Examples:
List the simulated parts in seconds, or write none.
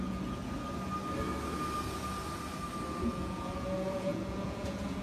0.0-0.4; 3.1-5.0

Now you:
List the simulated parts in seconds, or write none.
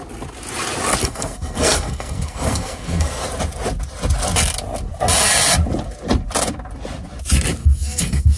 1.0-3.2; 7.6-8.4